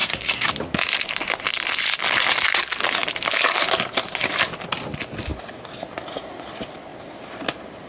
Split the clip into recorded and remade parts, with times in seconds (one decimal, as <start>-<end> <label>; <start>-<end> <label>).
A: 0.0-0.5 remade; 0.5-7.9 recorded